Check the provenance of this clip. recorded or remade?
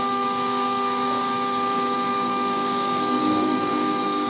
remade